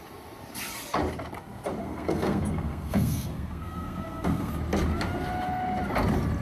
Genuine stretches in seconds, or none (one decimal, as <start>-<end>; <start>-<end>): 0.0-1.8; 4.5-6.4